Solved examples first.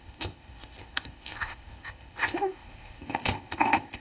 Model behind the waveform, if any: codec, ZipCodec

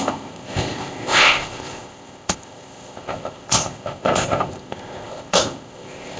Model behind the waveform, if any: codec, ZipCodec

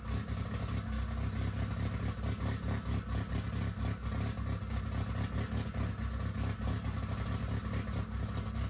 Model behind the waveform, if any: none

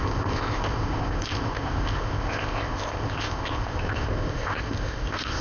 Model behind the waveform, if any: codec, ZipCodec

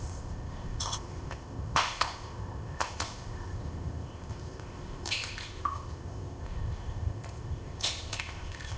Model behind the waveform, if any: codec, ZipCodec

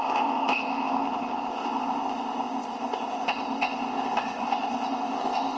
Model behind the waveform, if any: codec, ZipCodec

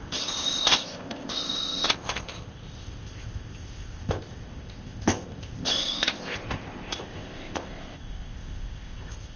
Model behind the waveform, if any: codec, ZipCodec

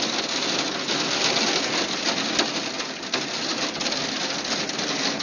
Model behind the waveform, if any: none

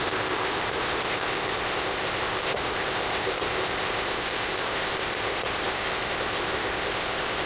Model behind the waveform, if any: codec, ZipCodec